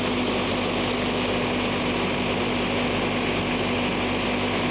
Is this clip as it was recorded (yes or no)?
yes